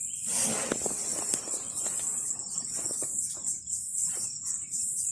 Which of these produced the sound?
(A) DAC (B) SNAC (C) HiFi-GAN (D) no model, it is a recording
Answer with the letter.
D